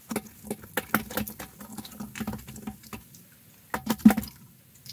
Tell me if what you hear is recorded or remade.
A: recorded